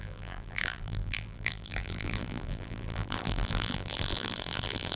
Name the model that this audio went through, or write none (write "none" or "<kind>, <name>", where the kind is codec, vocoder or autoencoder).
vocoder, BigVGAN v2